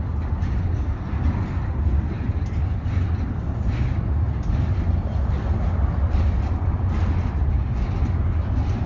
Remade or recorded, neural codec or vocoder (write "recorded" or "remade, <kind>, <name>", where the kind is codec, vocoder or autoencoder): recorded